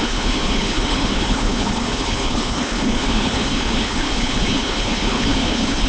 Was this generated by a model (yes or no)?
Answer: yes